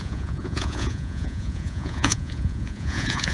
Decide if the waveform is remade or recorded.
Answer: remade